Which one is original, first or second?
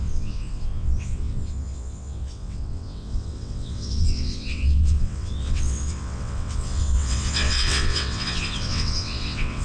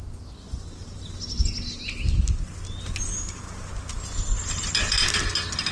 second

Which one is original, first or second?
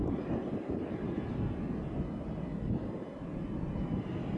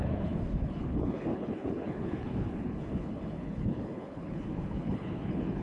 first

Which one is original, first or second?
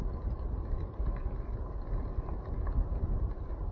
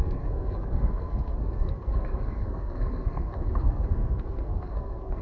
first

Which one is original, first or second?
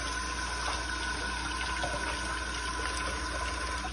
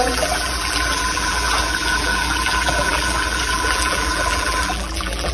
first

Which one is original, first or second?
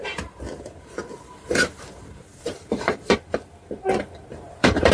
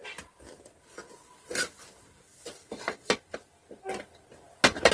second